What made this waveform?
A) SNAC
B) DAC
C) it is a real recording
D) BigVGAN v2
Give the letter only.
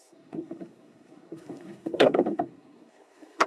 A